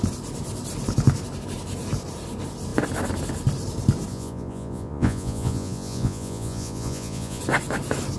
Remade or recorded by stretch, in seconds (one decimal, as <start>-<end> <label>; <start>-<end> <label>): 0.0-4.1 recorded; 4.1-7.4 remade; 7.4-8.2 recorded